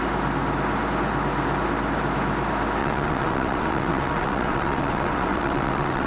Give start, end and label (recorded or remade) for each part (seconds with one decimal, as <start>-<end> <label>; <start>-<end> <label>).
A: 0.0-2.8 recorded; 2.8-6.1 remade